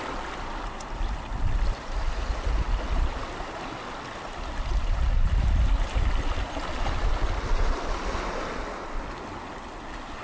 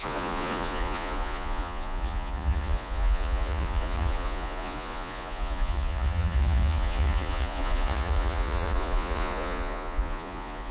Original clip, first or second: first